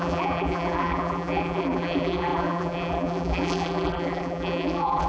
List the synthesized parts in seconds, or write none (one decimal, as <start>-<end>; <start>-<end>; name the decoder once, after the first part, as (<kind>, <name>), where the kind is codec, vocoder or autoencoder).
0.0-5.1 (vocoder, BigVGAN v2)

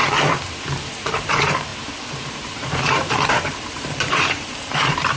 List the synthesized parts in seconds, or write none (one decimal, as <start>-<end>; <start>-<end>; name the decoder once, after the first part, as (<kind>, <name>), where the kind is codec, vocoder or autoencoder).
1.1-1.7 (vocoder, BigVGAN v2); 2.3-5.2

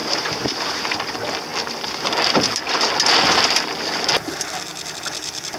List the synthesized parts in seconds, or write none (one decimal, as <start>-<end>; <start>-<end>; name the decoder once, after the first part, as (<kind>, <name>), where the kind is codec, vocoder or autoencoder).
none

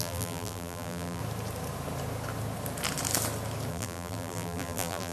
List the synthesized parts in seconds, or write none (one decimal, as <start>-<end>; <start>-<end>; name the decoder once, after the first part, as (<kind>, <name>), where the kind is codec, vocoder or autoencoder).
0.0-1.2 (vocoder, BigVGAN v2); 3.7-5.1

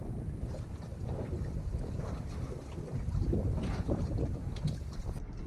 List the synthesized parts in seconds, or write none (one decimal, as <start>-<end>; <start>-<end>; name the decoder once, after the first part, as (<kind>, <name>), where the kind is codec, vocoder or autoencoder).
none